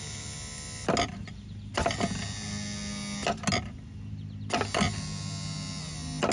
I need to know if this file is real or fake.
real